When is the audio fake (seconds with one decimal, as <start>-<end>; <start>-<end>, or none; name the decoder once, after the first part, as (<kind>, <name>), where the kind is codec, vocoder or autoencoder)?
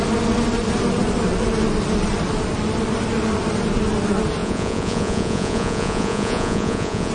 4.4-7.1 (vocoder, Vocos)